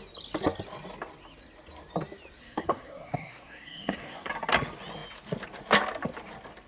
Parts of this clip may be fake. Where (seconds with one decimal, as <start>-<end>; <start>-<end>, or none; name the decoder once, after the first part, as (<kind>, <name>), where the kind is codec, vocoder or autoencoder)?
2.4-4.3 (codec, SNAC)